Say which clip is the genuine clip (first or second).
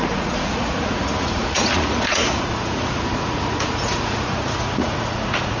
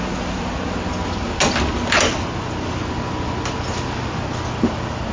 second